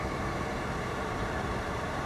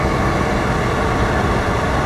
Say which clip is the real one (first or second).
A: second